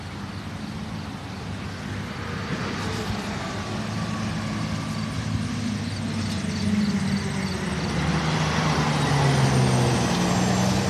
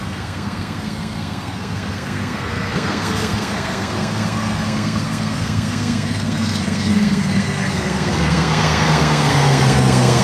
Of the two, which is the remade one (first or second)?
second